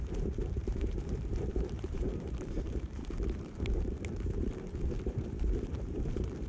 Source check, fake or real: fake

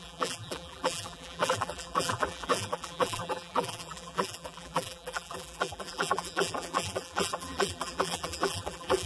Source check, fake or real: fake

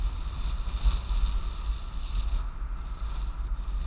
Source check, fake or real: real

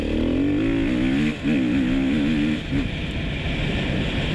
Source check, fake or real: real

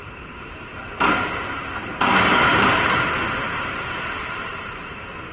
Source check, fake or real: fake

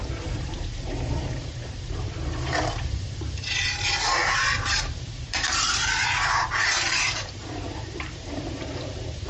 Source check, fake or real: fake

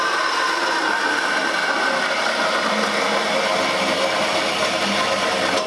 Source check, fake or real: real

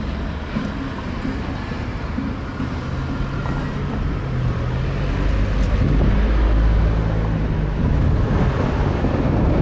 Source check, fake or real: real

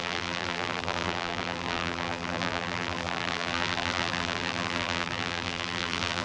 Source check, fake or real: fake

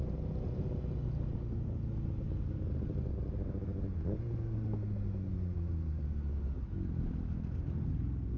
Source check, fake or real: real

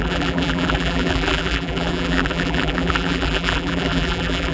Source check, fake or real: fake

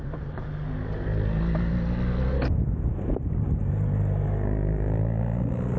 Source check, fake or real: real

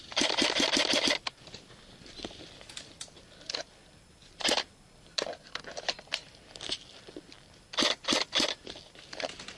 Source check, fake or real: real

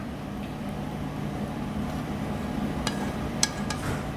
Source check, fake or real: real